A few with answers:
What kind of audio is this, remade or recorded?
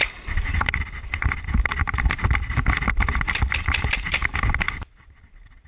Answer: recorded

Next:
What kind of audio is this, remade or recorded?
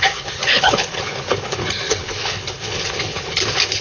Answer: remade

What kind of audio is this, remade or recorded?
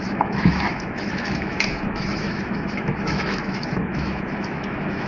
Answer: remade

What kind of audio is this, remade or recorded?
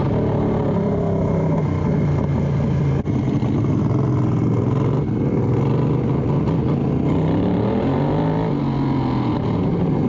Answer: recorded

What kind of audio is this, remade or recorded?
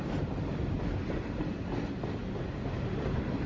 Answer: recorded